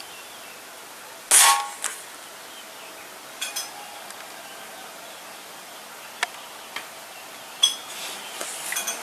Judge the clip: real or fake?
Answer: real